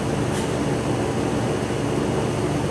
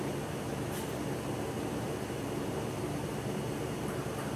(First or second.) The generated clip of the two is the second